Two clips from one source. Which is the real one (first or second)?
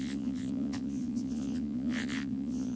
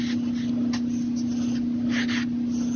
second